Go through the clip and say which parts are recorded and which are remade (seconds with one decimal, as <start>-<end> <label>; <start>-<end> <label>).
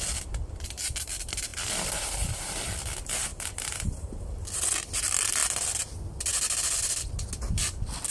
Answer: 0.0-1.5 recorded; 1.5-2.7 remade; 2.7-3.3 recorded; 3.3-4.1 remade; 4.1-8.1 recorded